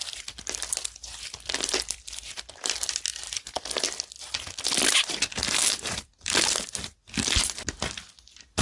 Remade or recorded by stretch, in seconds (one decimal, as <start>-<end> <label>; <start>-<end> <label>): 0.0-8.6 remade